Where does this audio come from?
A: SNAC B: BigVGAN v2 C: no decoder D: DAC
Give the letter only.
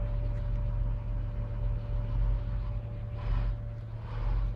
C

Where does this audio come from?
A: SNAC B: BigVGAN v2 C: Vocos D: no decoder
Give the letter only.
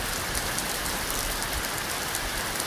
D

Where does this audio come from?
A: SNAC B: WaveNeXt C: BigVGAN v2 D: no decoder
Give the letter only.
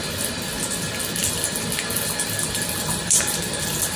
D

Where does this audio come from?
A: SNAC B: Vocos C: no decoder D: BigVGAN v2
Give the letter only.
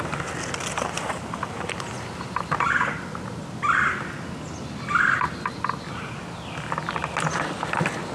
C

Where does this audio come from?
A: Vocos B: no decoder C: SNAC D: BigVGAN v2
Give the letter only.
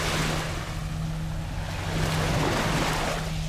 B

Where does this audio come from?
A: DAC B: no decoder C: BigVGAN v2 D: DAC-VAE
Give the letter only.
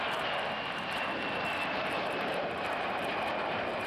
C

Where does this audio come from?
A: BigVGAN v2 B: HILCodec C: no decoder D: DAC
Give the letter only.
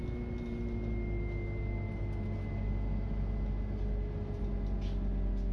C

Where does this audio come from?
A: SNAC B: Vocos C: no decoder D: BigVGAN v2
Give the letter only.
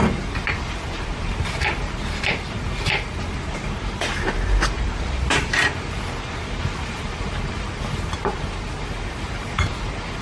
D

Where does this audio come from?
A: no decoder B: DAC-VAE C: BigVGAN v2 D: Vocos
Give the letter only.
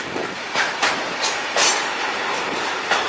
C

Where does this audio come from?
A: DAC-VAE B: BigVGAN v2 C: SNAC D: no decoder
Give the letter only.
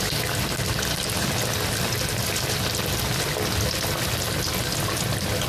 D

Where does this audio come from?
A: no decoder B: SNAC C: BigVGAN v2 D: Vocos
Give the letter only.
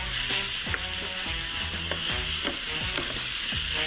A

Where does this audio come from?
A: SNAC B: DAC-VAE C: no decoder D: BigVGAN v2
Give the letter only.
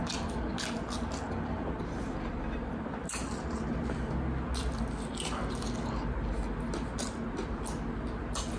C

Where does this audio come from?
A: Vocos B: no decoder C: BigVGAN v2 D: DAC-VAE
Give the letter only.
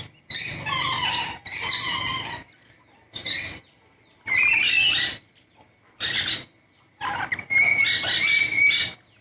B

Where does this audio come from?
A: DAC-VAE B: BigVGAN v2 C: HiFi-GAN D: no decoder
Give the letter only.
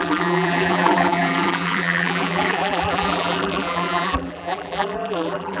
B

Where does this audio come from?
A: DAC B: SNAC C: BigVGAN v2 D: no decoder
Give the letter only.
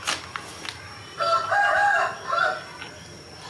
D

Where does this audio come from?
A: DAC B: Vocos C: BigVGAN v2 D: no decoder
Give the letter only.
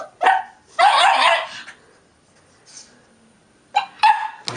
D